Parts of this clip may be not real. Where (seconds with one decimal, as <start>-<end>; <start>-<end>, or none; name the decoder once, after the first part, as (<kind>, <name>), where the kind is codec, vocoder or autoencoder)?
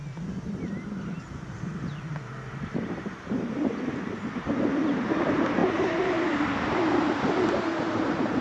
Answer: none